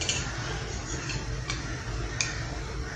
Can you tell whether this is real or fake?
real